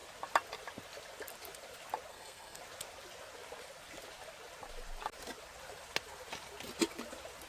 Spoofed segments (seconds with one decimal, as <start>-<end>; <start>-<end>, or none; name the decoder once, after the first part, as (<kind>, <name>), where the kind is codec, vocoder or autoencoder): 2.1-2.6 (codec, SNAC)